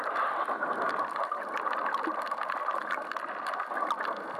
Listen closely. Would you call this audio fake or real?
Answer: real